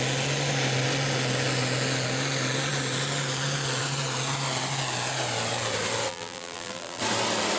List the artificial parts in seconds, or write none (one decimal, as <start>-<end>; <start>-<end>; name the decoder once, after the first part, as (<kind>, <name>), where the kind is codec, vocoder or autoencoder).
6.1-7.0 (vocoder, BigVGAN v2)